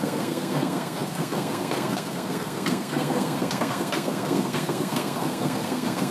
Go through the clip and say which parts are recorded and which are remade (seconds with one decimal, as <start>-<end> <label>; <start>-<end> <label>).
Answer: 0.0-6.1 remade